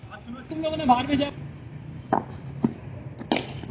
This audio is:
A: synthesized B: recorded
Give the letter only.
B